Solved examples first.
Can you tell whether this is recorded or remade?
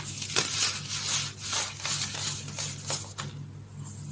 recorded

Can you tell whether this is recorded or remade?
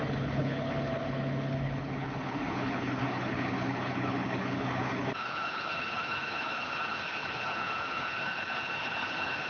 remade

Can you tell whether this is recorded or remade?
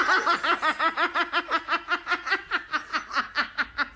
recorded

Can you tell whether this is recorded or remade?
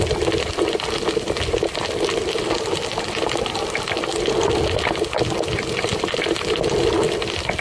recorded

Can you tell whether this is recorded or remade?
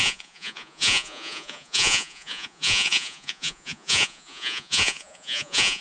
remade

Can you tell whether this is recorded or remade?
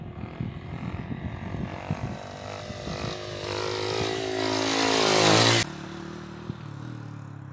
recorded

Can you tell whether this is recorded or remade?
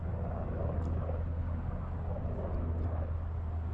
recorded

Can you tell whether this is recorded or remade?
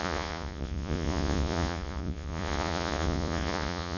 remade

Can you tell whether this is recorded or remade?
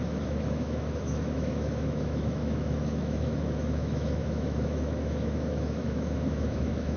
remade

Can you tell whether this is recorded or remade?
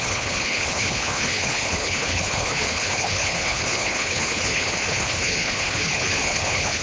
remade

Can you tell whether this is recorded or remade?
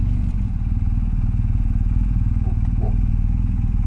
remade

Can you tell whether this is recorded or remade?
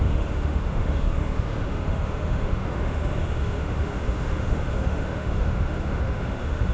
remade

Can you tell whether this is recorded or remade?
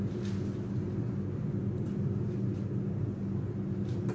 recorded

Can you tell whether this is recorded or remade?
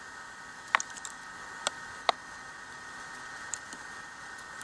remade